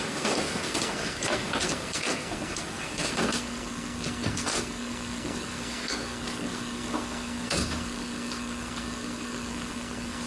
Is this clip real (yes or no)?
no